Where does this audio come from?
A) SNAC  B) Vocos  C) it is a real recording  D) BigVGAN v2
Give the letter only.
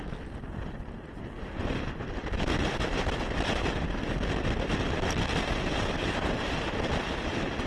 C